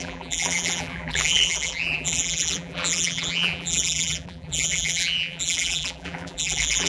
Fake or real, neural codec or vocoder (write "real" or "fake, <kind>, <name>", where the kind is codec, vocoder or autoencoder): fake, vocoder, BigVGAN v2